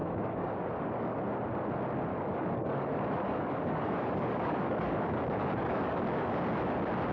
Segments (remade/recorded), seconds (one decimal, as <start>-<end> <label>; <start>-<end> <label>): 0.0-1.2 remade; 1.2-2.1 recorded; 2.1-6.4 remade; 6.4-7.1 recorded